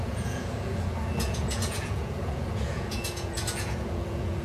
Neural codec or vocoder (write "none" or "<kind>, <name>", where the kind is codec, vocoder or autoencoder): vocoder, Vocos